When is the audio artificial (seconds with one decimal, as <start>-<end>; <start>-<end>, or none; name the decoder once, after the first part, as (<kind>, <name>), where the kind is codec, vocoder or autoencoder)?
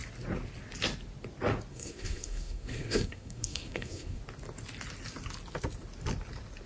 1.7-4.2 (codec, SNAC)